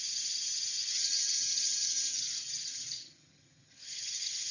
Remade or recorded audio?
remade